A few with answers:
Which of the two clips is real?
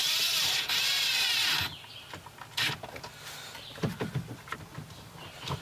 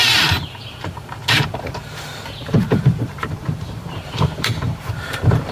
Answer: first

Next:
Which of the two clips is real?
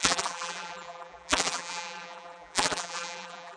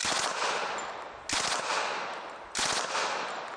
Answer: second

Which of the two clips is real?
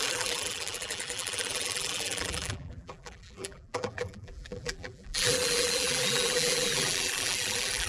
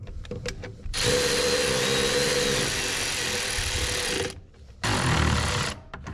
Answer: second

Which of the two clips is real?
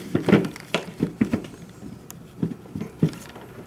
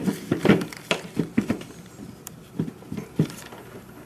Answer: second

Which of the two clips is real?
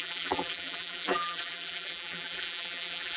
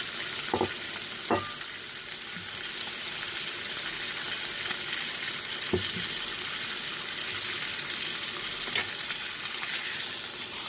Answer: second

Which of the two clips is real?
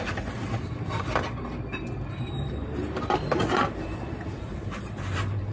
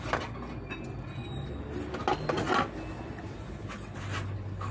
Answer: second